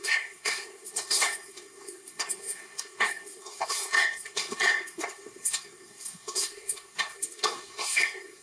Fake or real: fake